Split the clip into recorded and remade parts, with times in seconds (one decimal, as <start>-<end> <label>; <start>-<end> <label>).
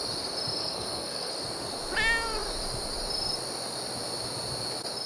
0.0-0.6 recorded; 0.6-1.3 remade; 1.3-5.1 recorded